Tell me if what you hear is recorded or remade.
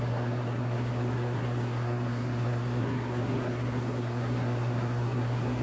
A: remade